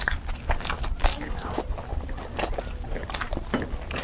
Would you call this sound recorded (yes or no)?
yes